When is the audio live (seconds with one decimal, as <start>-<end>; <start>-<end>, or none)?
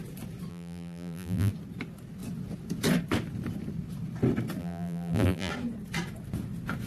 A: 0.0-0.5; 1.5-4.6; 5.5-6.9